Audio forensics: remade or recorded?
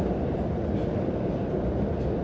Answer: recorded